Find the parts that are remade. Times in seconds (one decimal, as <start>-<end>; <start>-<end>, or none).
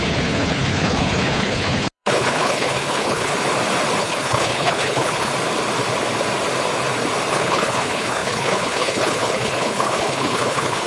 0.0-3.3; 4.0-5.3; 7.3-10.9